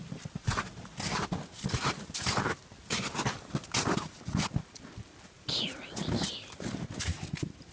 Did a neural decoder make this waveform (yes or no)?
no